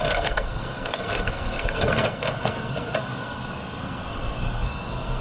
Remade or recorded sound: remade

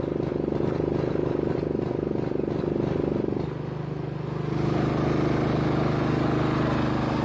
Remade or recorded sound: recorded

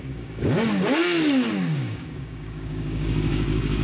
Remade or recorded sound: remade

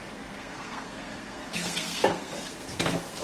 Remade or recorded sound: remade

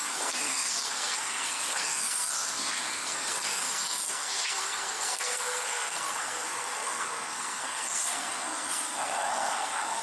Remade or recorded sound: remade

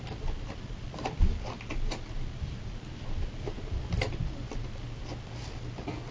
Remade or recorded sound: recorded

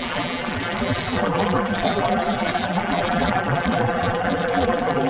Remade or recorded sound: remade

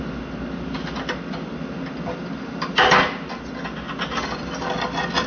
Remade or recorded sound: recorded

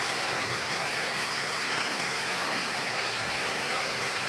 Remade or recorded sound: remade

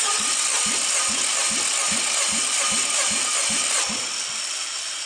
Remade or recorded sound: recorded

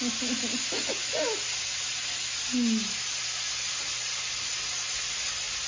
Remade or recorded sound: recorded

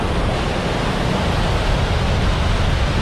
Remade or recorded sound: recorded